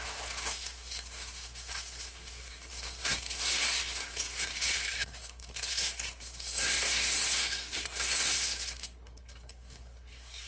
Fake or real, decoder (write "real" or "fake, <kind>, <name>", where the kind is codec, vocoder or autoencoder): fake, codec, SNAC